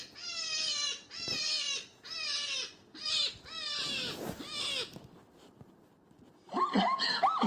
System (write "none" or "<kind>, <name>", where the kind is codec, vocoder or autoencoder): none